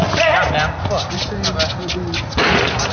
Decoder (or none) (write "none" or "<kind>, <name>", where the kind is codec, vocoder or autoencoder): none